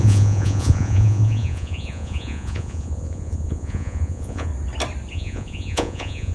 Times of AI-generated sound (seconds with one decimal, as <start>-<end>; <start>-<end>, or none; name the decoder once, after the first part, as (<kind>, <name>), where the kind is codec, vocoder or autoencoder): 0.0-4.5 (vocoder, Vocos); 5.1-6.3